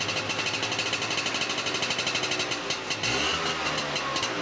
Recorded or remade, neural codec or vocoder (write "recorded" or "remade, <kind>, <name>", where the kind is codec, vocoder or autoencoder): recorded